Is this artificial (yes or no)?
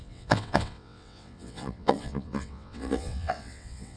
yes